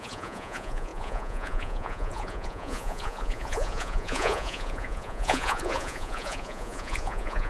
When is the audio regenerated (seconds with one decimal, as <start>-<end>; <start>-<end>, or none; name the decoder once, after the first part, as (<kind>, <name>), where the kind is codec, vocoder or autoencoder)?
0.0-7.5 (vocoder, Vocos)

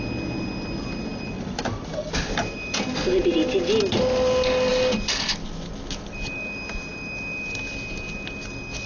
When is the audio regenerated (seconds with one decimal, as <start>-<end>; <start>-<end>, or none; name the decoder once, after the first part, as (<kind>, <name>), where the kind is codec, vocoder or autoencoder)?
none

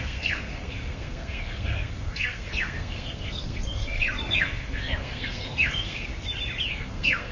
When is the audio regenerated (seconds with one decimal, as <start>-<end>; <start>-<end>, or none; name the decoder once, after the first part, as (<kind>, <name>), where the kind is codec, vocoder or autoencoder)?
0.0-6.1 (codec, SNAC); 6.7-7.3

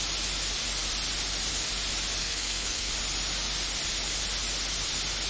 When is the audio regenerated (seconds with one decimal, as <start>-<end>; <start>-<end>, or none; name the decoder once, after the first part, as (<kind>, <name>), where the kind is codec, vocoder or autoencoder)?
2.2-2.9 (codec, SNAC)

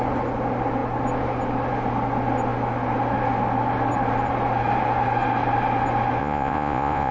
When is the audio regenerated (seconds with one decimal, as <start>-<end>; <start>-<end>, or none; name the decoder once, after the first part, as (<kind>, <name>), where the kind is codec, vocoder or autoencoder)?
6.2-7.1 (vocoder, Vocos)

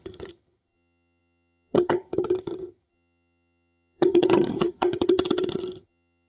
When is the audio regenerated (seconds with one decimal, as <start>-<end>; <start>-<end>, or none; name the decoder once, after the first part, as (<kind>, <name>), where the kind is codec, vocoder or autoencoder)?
0.0-6.3 (vocoder, HiFi-GAN)

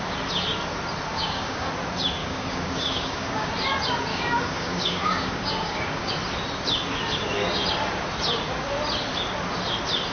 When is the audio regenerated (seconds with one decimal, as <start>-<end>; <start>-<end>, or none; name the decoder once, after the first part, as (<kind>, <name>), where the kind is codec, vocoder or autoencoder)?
1.1-1.7 (codec, DAC); 2.2-3.5; 4.1-6.1